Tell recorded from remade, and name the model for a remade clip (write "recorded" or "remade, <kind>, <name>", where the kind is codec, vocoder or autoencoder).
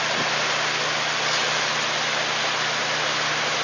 recorded